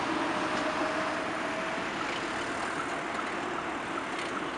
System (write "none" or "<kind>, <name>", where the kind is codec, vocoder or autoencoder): none